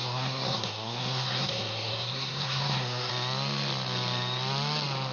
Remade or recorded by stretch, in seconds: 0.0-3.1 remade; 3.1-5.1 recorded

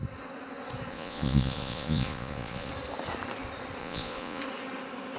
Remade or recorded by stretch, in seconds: 0.0-0.9 recorded; 0.9-2.7 remade; 2.7-3.8 recorded; 3.8-4.4 remade; 4.4-5.2 recorded